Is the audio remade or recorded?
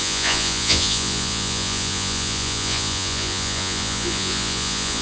remade